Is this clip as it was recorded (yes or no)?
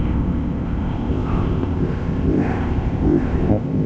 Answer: no